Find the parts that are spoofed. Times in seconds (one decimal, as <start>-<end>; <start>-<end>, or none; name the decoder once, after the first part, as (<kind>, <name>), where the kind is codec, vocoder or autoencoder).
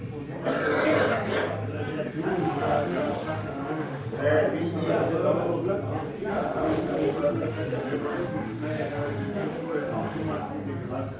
2.3-4.2 (autoencoder, DAC-VAE); 6.3-10.5